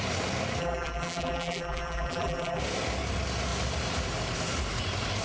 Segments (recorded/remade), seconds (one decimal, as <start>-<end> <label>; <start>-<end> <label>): 0.0-0.6 recorded; 0.6-2.6 remade; 2.6-5.2 recorded

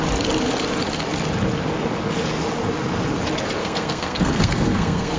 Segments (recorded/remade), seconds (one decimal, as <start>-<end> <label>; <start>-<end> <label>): 0.0-3.6 recorded; 3.6-5.2 remade

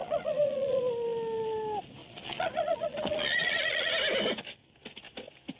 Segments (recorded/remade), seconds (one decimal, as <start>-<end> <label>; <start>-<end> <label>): 0.0-0.8 remade; 0.8-2.0 recorded; 2.0-3.9 remade; 3.9-5.6 recorded

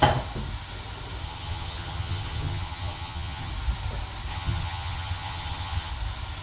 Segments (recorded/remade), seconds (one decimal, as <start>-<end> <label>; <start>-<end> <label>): 0.0-1.2 recorded; 1.2-3.5 remade; 3.5-4.3 recorded; 4.3-5.9 remade; 5.9-6.4 recorded

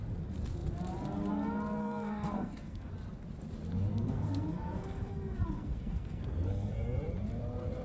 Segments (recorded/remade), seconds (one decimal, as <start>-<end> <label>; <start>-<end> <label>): 0.0-1.8 recorded; 1.8-2.9 remade; 2.9-3.9 recorded; 3.9-7.0 remade; 7.0-7.8 recorded

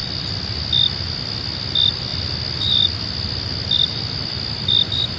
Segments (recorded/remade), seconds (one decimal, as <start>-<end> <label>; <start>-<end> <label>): 0.0-5.2 recorded

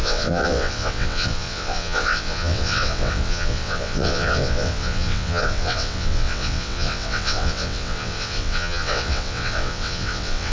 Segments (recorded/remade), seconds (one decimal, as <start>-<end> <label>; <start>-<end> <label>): 0.0-10.5 remade